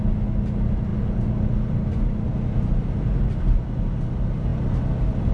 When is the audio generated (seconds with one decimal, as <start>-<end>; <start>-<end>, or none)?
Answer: none